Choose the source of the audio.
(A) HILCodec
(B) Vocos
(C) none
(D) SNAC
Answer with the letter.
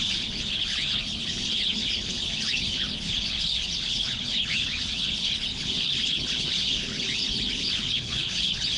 A